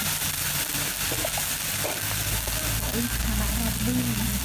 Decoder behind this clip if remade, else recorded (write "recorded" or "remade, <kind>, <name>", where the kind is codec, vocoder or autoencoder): recorded